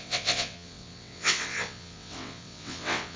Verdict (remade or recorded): remade